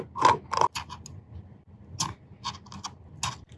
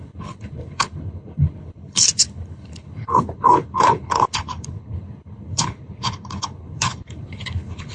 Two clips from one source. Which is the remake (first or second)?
second